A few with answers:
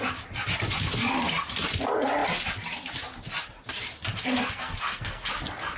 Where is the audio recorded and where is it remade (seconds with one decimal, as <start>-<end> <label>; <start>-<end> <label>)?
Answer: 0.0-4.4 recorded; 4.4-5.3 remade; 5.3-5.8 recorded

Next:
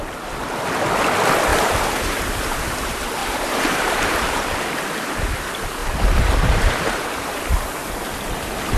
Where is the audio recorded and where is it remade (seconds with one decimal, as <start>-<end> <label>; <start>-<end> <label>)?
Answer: 0.0-1.5 recorded; 1.5-2.6 remade; 2.6-3.2 recorded; 3.2-4.8 remade; 4.8-5.8 recorded; 5.8-7.4 remade; 7.4-8.8 recorded

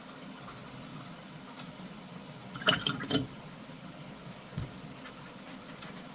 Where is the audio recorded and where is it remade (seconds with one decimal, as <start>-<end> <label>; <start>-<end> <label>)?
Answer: 0.0-0.9 recorded; 0.9-3.8 remade; 3.8-4.2 recorded; 4.2-6.1 remade

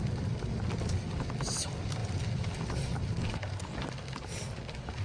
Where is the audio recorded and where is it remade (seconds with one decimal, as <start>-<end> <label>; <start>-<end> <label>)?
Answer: 0.0-5.0 recorded

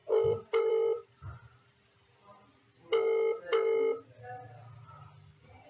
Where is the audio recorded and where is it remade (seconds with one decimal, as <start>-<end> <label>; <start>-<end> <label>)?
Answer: 0.0-2.2 remade; 2.2-5.7 recorded